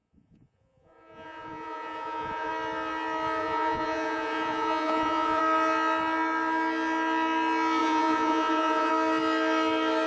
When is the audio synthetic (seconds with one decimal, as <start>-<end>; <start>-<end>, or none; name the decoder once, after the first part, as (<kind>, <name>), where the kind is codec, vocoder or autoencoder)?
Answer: 0.0-2.5 (vocoder, Vocos); 3.4-5.4; 7.8-8.9